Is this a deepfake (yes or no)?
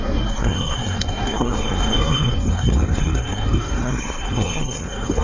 yes